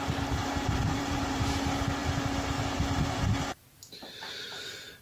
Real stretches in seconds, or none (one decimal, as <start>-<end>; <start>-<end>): 0.0-0.4; 1.4-5.0